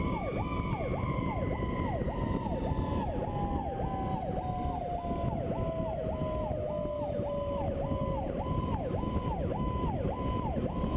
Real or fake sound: real